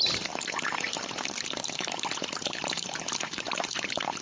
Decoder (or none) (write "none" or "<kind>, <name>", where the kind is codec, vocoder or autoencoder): vocoder, BigVGAN v2